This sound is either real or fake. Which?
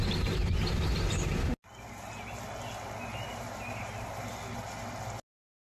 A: real